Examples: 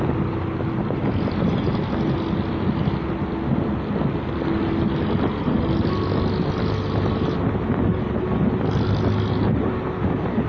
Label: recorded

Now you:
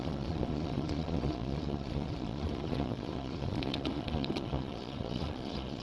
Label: remade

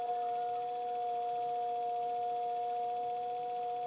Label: recorded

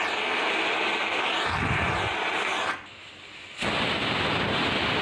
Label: recorded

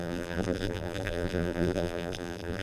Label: remade